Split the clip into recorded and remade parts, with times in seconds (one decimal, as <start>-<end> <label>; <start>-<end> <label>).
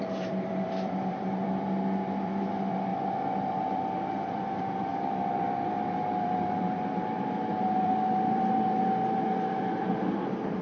0.0-2.9 remade; 2.9-3.7 recorded; 3.7-10.6 remade